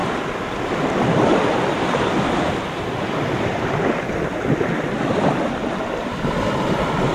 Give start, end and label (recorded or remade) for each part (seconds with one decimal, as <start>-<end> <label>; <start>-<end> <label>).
0.0-7.1 recorded